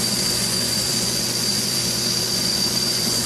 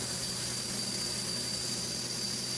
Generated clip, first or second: first